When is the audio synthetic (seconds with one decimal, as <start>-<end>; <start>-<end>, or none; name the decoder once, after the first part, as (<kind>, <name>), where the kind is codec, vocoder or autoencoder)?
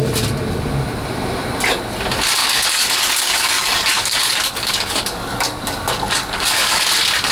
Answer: 2.4-6.8 (codec, DAC)